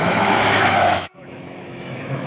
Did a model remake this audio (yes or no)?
yes